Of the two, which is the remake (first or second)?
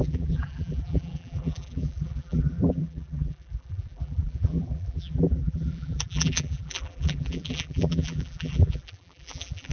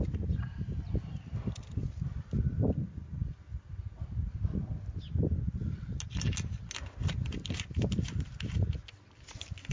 first